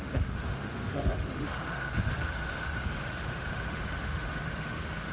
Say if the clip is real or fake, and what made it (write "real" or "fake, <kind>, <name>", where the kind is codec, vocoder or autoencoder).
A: fake, autoencoder, DAC-VAE